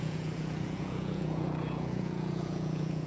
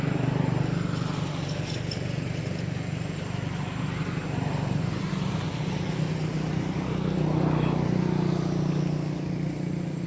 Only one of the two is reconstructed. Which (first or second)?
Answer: first